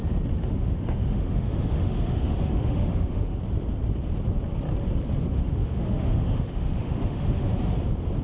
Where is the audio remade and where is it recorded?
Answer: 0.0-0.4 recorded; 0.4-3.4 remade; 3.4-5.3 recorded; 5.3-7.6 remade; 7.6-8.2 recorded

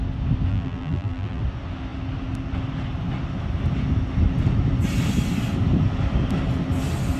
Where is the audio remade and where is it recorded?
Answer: 0.0-0.5 recorded; 0.5-1.4 remade; 1.4-7.2 recorded

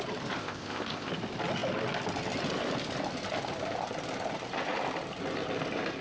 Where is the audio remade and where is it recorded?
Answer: 0.0-0.4 recorded; 0.4-1.1 remade; 1.1-6.0 recorded

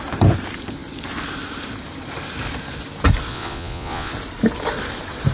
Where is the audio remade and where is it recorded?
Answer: 0.0-3.3 recorded; 3.3-4.1 remade; 4.1-5.3 recorded

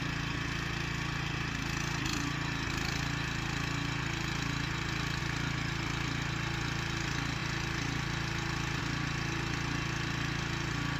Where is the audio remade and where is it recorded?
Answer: 0.0-11.0 recorded